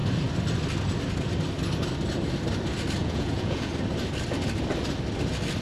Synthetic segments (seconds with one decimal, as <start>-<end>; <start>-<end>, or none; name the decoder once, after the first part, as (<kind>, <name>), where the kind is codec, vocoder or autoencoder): 3.0-3.7 (vocoder, Vocos)